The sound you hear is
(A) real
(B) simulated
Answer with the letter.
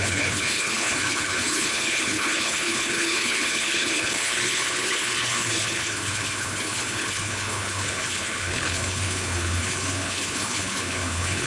B